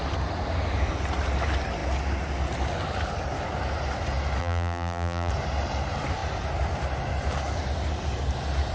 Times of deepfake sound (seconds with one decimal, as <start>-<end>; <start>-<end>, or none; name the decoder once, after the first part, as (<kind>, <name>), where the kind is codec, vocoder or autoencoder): 4.4-5.3 (vocoder, BigVGAN v2)